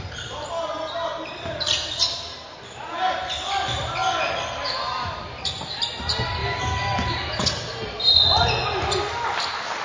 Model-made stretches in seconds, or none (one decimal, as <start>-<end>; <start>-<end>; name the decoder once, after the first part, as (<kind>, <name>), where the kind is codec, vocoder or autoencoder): none